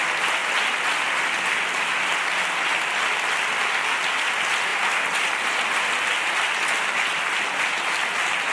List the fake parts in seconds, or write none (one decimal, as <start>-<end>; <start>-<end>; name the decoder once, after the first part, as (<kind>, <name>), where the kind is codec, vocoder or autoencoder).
none